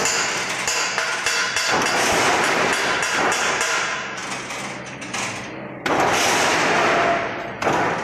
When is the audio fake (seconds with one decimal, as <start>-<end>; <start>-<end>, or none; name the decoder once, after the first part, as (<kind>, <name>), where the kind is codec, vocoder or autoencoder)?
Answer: none